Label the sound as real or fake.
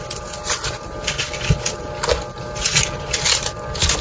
real